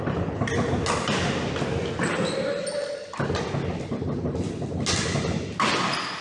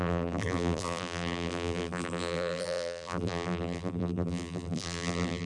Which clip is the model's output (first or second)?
second